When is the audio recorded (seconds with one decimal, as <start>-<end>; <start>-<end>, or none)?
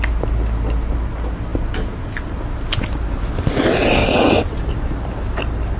0.0-4.0; 4.6-5.8